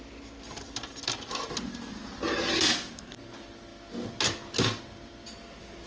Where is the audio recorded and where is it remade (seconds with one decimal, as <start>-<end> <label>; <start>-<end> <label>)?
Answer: 0.0-5.9 recorded